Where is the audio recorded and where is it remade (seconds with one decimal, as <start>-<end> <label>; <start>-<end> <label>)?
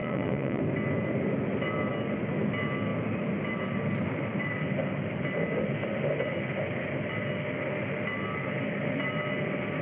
0.0-0.6 remade; 0.6-9.8 recorded